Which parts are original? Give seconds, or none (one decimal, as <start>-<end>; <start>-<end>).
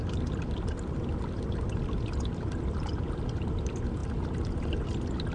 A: 0.0-5.3